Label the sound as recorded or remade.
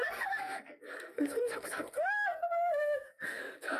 remade